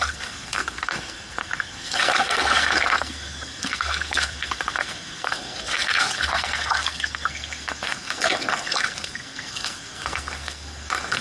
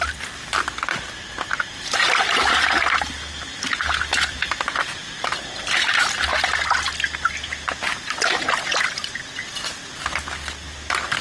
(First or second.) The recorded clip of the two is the second